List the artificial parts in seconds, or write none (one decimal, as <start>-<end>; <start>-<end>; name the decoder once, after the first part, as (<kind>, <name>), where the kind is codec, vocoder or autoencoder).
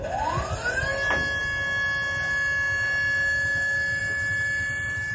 none